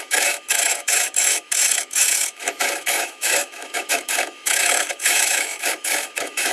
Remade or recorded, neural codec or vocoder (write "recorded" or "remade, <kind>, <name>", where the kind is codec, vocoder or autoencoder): remade, autoencoder, DAC-VAE